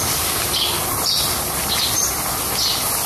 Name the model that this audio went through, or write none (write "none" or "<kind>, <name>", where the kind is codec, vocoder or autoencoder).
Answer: none